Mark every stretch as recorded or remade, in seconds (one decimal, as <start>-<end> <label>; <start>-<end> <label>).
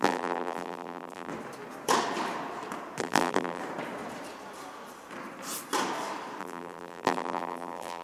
0.0-1.3 remade; 1.3-3.0 recorded; 3.0-3.6 remade; 3.6-6.4 recorded; 6.4-8.0 remade